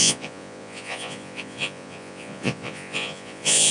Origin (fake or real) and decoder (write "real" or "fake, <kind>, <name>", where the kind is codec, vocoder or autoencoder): fake, vocoder, Vocos